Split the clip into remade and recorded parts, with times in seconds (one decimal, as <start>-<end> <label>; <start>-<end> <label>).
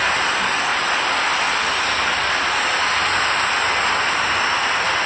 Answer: 0.0-5.1 recorded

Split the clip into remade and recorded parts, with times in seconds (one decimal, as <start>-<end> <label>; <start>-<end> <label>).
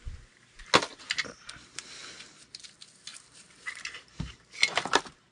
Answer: 0.0-0.9 recorded; 0.9-1.5 remade; 1.5-3.1 recorded; 3.1-4.4 remade; 4.4-5.3 recorded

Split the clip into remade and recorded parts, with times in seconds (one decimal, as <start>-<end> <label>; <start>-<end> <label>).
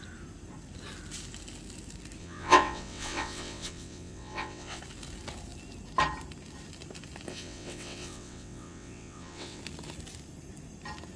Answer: 0.0-2.2 recorded; 2.2-4.8 remade; 4.8-7.3 recorded; 7.3-9.6 remade; 9.6-11.2 recorded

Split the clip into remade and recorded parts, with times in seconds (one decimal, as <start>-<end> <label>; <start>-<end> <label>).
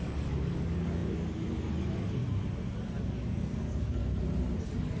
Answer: 0.0-2.2 remade; 2.2-3.0 recorded; 3.0-4.0 remade; 4.0-4.6 recorded; 4.6-5.0 remade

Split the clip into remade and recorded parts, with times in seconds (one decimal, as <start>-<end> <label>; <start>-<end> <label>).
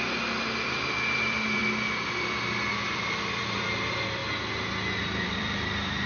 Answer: 0.0-4.2 remade; 4.2-5.0 recorded; 5.0-6.1 remade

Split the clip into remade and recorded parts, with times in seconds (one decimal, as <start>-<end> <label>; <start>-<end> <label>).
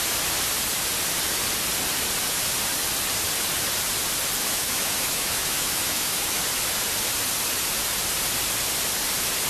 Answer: 0.0-4.4 recorded; 4.4-6.4 remade; 6.4-9.5 recorded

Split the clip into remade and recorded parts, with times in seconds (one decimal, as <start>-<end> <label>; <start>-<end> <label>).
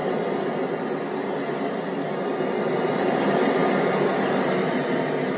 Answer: 0.0-5.4 recorded